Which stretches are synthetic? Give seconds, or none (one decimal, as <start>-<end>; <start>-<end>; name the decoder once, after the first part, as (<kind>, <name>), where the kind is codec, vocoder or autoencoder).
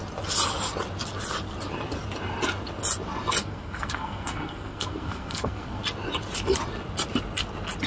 3.4-5.8 (codec, SNAC)